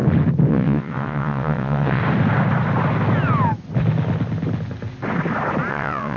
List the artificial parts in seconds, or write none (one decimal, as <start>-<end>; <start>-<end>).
0.5-2.0; 5.7-6.2